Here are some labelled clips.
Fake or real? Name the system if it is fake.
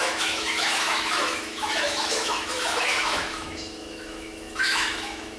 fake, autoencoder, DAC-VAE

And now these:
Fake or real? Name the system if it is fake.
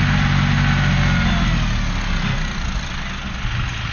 real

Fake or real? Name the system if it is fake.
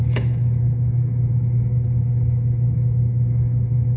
fake, autoencoder, DAC-VAE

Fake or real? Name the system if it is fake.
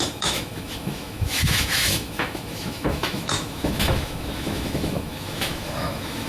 fake, autoencoder, DAC-VAE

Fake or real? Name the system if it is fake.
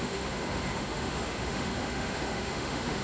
fake, autoencoder, DAC-VAE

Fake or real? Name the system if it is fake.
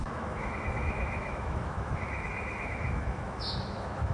fake, autoencoder, DAC-VAE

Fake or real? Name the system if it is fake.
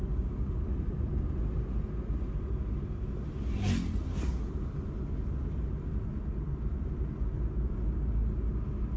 real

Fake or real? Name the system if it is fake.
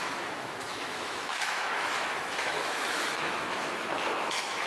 fake, autoencoder, DAC-VAE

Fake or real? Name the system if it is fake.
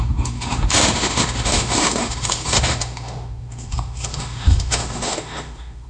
fake, autoencoder, DAC-VAE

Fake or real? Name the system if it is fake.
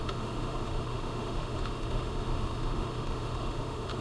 fake, autoencoder, DAC-VAE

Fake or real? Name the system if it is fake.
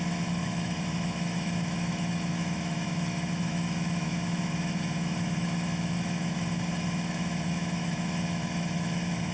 fake, autoencoder, DAC-VAE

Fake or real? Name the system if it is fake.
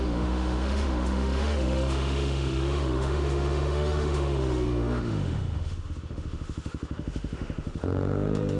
fake, autoencoder, DAC-VAE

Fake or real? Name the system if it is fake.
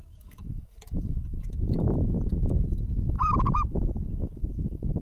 fake, autoencoder, DAC-VAE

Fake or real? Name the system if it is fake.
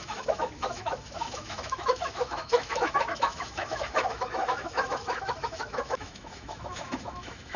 fake, autoencoder, DAC-VAE